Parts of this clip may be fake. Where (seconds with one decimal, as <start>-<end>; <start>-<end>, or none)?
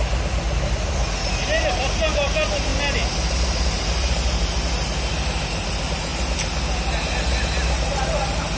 none